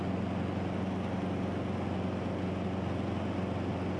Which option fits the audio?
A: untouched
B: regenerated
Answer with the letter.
A